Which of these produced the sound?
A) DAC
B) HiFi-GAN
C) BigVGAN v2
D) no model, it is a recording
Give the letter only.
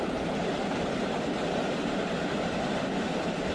C